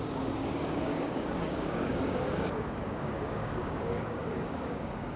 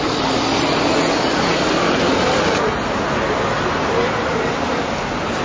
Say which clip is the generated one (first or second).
first